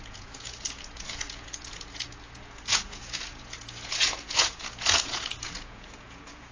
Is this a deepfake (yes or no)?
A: yes